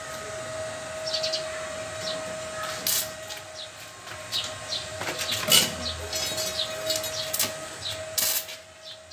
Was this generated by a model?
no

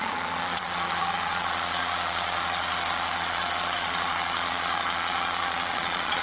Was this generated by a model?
yes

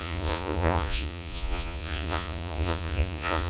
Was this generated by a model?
yes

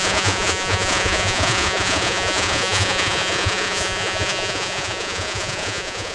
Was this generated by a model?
yes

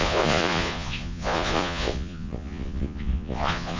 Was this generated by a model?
yes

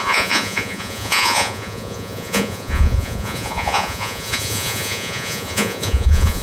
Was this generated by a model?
yes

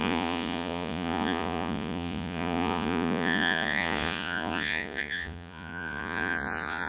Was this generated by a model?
yes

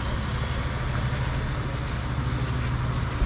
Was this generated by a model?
no